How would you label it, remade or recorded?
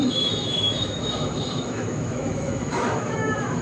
remade